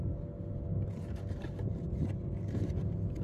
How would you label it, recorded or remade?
recorded